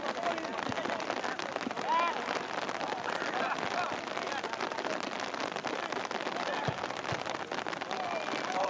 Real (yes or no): yes